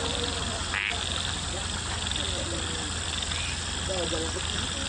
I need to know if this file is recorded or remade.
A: recorded